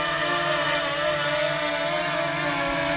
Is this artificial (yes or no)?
no